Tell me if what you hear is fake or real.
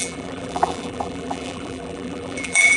fake